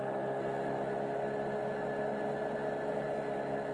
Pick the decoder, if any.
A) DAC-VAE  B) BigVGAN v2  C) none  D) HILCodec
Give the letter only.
C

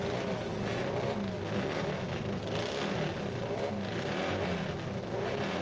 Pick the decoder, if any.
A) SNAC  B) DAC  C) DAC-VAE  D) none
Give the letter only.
D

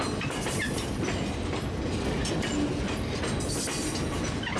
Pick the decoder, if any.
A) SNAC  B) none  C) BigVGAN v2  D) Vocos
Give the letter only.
B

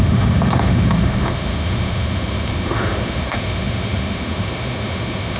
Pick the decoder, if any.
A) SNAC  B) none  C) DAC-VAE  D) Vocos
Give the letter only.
C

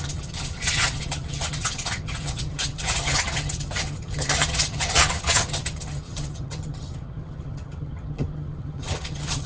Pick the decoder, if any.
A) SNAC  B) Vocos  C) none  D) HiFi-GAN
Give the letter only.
D